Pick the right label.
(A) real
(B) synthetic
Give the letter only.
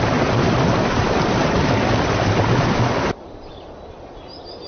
A